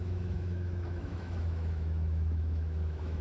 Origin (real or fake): fake